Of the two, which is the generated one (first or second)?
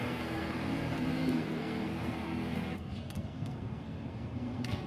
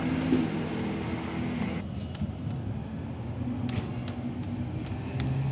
first